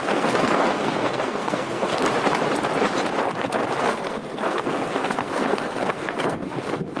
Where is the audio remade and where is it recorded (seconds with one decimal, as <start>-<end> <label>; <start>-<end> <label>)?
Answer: 0.0-1.9 remade; 1.9-3.8 recorded; 3.8-7.0 remade